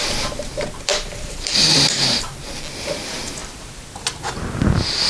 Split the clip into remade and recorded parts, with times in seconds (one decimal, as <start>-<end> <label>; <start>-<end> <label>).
0.0-0.9 recorded; 0.9-2.4 remade; 2.4-5.1 recorded